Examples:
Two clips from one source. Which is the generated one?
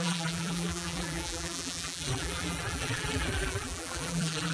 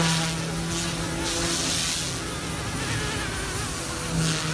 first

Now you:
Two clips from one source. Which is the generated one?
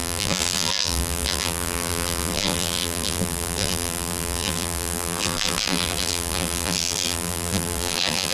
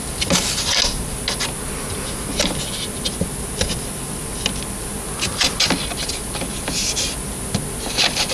first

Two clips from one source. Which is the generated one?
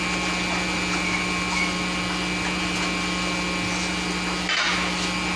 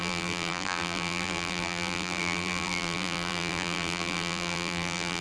second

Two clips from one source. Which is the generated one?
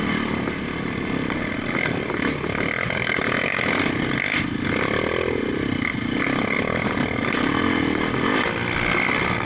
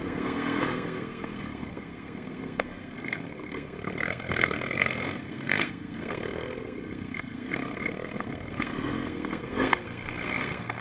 second